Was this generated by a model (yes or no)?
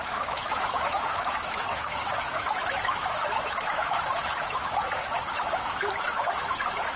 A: yes